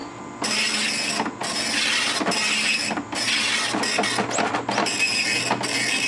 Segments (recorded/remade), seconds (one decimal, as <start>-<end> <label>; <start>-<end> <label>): 0.0-6.1 recorded